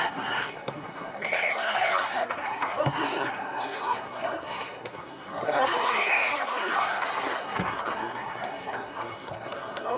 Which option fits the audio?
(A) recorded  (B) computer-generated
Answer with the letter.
B